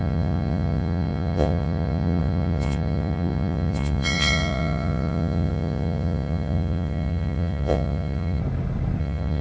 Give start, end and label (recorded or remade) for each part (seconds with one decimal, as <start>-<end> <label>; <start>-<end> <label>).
0.0-8.4 remade; 8.4-9.0 recorded; 9.0-9.4 remade